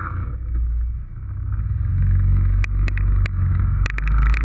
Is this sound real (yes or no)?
no